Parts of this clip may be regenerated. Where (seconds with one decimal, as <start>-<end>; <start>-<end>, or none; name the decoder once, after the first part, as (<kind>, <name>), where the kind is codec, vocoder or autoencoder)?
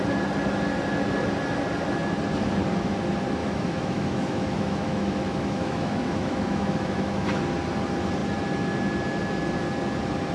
3.4-7.4 (autoencoder, DAC-VAE)